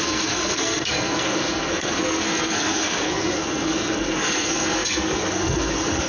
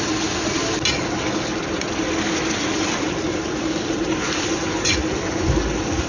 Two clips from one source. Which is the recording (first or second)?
second